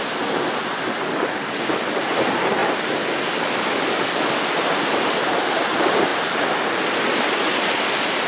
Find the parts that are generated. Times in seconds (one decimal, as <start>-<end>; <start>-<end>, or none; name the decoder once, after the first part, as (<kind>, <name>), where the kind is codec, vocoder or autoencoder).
none